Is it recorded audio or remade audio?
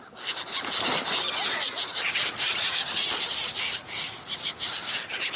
recorded